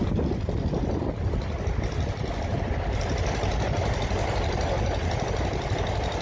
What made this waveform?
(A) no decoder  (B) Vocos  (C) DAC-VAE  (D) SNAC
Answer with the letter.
A